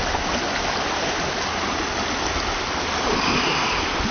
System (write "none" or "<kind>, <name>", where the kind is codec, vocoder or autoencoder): none